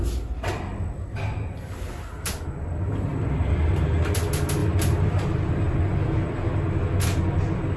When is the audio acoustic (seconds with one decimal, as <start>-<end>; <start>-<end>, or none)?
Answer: 0.0-3.1; 3.8-4.6; 6.7-7.8